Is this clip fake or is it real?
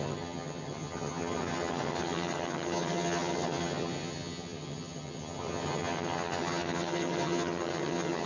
fake